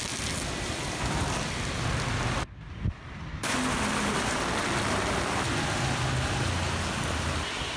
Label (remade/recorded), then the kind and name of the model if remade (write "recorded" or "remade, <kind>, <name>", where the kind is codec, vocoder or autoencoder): recorded